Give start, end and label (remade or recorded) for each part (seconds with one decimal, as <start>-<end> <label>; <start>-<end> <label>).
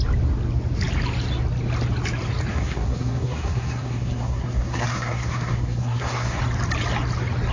0.0-2.5 recorded; 2.5-6.4 remade; 6.4-7.5 recorded